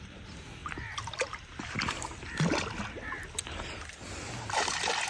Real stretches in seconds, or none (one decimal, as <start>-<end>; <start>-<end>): 0.0-5.1